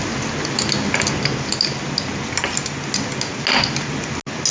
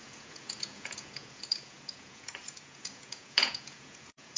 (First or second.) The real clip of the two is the first